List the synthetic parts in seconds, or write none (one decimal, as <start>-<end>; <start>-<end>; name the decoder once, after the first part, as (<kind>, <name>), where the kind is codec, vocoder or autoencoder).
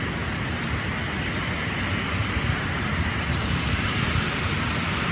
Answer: 2.2-4.3 (vocoder, BigVGAN v2)